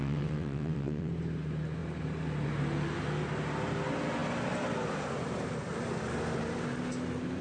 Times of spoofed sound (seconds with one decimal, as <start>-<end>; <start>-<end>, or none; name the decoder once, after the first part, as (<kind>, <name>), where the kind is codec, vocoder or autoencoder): 0.0-1.1 (vocoder, WaveNeXt)